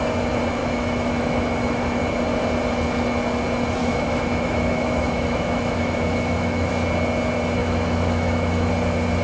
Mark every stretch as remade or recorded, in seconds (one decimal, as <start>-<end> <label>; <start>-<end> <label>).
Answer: 0.0-0.6 recorded; 0.6-2.0 remade; 2.0-3.8 recorded; 3.8-6.7 remade; 6.7-7.6 recorded; 7.6-8.7 remade; 8.7-9.2 recorded